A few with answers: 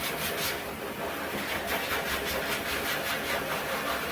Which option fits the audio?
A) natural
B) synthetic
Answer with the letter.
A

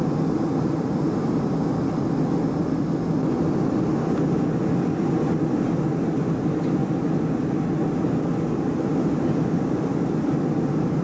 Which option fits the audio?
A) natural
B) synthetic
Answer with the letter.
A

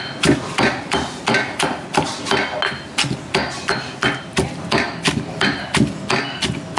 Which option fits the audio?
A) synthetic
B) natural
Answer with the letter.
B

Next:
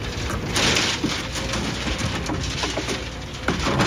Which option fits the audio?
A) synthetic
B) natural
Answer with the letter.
B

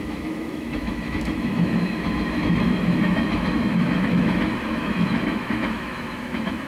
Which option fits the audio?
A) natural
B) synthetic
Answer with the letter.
B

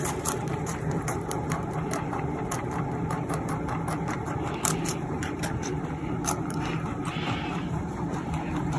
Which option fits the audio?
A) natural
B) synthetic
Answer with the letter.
B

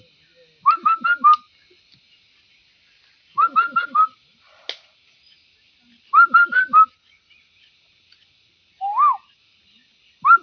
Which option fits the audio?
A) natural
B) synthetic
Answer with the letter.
A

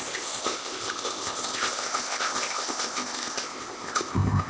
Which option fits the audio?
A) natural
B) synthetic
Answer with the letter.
B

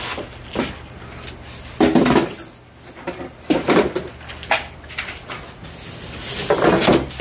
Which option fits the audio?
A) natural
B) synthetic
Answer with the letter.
A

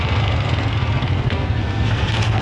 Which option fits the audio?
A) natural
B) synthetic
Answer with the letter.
B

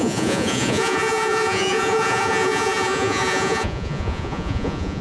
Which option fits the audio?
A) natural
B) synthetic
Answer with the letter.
B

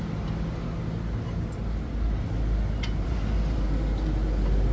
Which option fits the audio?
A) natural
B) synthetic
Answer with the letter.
A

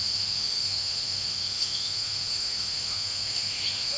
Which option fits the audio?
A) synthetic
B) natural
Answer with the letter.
A